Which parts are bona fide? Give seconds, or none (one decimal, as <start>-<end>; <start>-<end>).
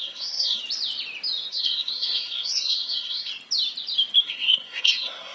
0.6-1.5; 3.3-4.2